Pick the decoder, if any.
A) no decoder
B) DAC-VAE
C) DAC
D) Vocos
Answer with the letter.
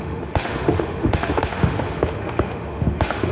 B